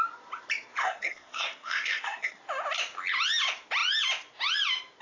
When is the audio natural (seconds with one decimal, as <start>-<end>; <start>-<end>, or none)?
0.0-0.8; 2.4-5.0